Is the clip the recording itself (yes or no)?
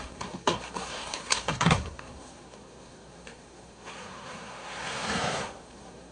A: no